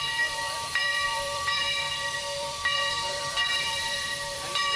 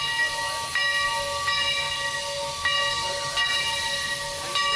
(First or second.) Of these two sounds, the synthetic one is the first